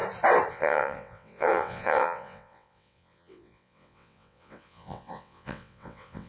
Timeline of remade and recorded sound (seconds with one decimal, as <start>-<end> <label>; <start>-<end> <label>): 0.0-0.5 recorded; 0.5-6.3 remade